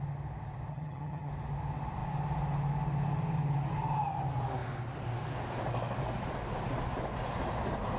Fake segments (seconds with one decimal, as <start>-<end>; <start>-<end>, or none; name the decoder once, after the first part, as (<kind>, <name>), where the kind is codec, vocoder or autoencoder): 0.7-1.3 (vocoder, HiFi-GAN)